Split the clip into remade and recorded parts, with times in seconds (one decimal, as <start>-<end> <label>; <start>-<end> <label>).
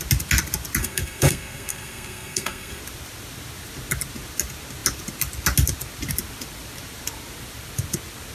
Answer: 0.0-0.8 recorded; 0.8-2.8 remade; 2.8-8.3 recorded